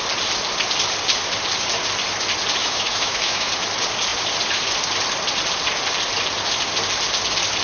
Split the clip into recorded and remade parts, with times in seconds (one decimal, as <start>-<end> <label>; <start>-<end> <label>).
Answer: 0.0-2.6 recorded; 2.6-3.5 remade; 3.5-7.6 recorded